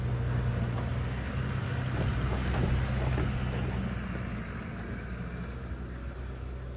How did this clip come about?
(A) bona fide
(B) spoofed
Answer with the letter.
A